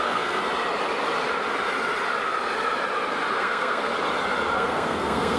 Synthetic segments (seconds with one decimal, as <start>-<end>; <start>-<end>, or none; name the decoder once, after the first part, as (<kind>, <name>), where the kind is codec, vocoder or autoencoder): 0.0-0.4 (codec, SNAC); 3.3-3.9; 4.5-5.4